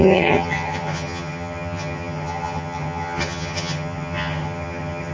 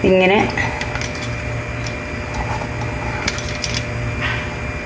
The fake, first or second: first